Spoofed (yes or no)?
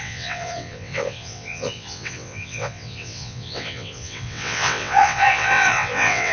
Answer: yes